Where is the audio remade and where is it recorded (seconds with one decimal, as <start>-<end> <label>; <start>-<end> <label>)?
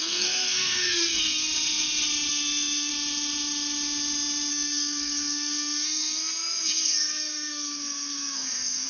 0.0-1.5 remade; 1.5-2.3 recorded; 2.3-2.9 remade; 2.9-4.5 recorded; 4.5-8.9 remade